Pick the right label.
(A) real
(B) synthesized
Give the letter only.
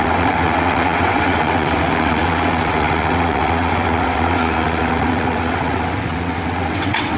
B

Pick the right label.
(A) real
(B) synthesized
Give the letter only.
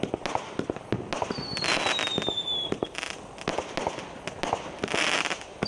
A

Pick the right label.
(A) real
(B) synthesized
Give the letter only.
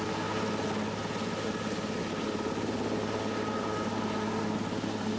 A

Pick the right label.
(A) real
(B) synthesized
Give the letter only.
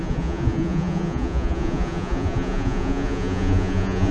B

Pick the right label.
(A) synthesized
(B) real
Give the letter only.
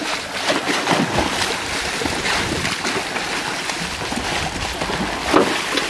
B